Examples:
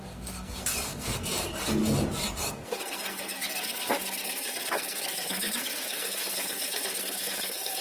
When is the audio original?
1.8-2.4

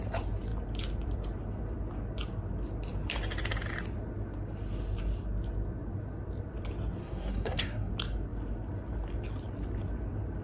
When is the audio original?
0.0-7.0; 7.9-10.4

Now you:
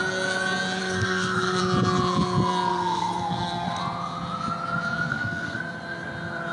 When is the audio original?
0.0-0.8; 1.6-2.7; 3.8-5.1; 5.6-6.5